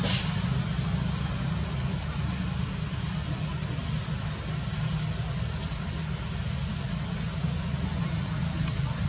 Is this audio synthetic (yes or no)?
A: no